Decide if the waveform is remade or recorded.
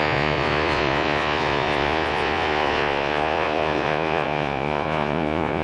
remade